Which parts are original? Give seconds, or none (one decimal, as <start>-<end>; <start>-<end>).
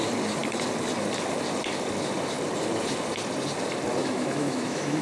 0.0-4.0